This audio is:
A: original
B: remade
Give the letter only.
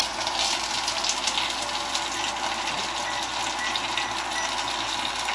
A